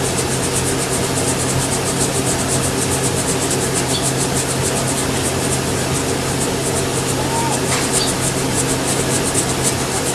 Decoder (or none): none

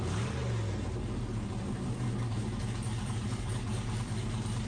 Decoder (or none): none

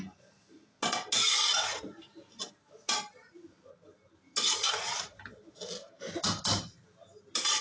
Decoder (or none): none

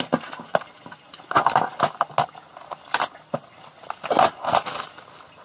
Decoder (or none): none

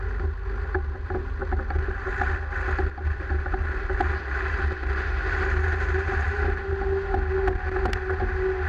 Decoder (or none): none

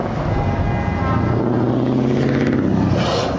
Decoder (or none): none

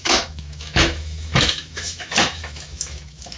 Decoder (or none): autoencoder, DAC-VAE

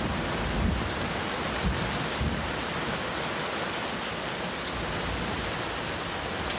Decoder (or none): none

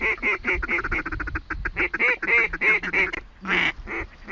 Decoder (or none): none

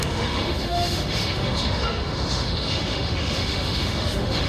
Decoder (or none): autoencoder, DAC-VAE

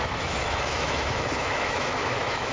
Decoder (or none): autoencoder, DAC-VAE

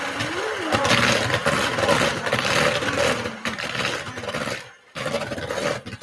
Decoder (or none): none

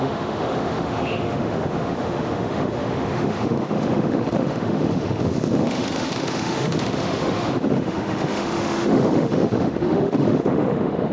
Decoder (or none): autoencoder, DAC-VAE